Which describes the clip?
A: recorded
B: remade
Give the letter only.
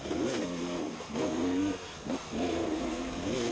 B